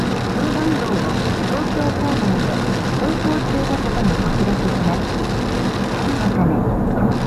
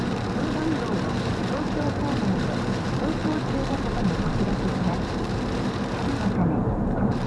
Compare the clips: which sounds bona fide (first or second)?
first